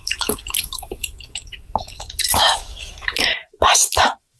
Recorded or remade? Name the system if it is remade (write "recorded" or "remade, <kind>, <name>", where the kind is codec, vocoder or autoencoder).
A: remade, autoencoder, DAC-VAE